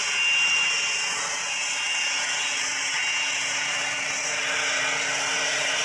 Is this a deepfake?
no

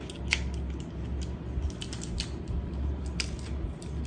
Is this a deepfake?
no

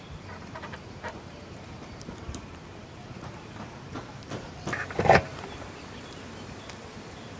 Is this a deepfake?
yes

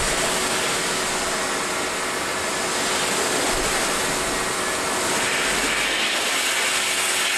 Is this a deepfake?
no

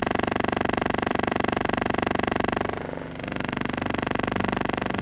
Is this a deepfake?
yes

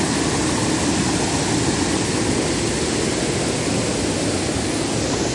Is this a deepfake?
no